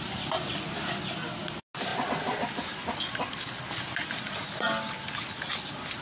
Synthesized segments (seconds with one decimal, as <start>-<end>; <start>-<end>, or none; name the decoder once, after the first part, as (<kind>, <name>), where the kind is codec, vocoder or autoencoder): none